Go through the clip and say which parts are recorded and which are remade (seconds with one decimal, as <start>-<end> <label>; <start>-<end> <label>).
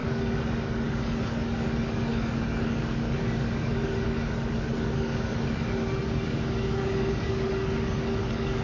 0.0-8.6 remade